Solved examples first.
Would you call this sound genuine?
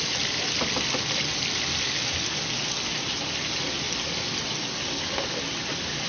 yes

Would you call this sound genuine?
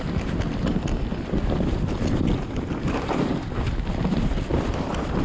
yes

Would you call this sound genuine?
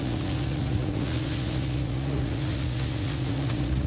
no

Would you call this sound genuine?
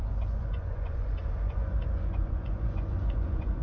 no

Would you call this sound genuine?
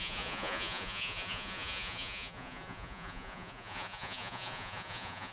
no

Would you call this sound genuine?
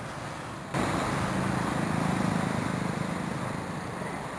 yes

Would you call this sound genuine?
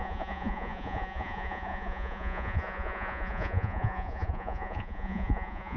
no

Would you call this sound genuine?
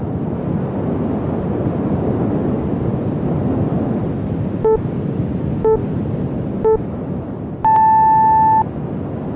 yes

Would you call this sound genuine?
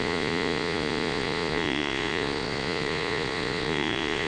no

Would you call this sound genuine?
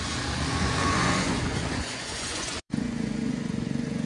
no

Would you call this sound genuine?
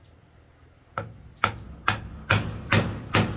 yes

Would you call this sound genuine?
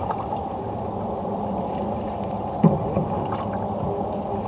yes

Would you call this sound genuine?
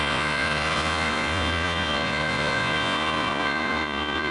no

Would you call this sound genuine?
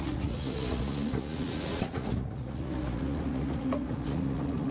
no